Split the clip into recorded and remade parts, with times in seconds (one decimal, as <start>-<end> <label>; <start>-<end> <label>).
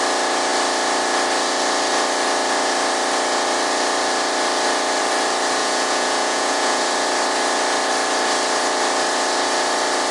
0.0-5.6 recorded; 5.6-6.8 remade; 6.8-10.1 recorded